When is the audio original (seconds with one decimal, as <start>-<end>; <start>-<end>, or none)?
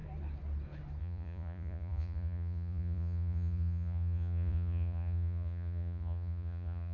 0.0-1.0